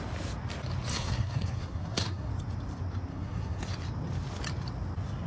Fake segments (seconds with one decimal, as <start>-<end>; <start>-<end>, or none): 0.9-2.3; 3.1-3.6

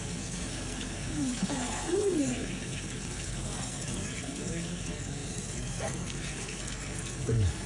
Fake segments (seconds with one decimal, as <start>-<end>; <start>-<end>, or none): 0.0-7.7